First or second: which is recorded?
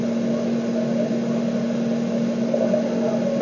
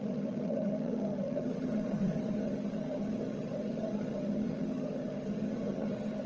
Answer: first